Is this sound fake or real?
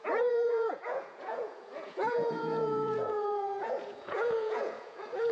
fake